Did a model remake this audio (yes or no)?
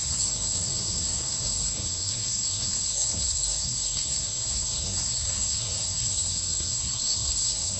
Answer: yes